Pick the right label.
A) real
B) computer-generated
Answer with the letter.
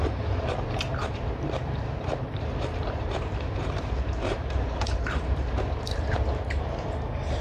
B